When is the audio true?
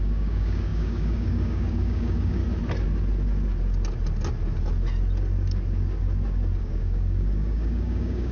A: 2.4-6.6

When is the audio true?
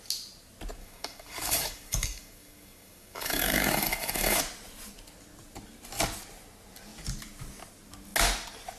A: 0.0-0.8; 4.4-8.8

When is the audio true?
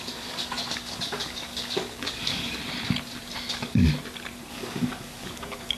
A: 2.6-3.5; 3.9-4.5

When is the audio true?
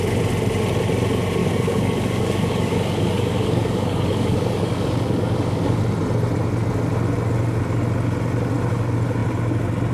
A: 0.0-1.4; 5.8-9.9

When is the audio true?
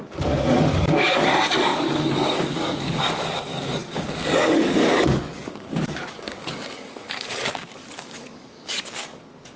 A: none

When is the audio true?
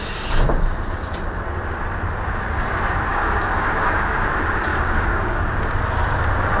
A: 0.0-3.1; 4.2-4.7; 5.6-6.6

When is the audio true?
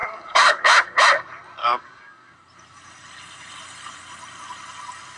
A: 0.6-1.6; 2.3-5.2